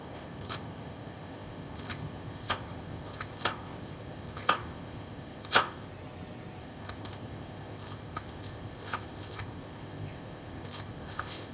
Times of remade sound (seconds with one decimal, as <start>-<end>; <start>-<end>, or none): 0.0-5.9; 6.6-11.5